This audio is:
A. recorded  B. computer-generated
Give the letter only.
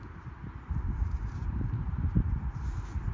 A